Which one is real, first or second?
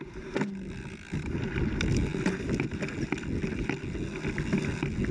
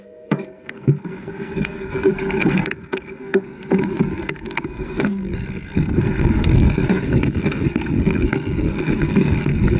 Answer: first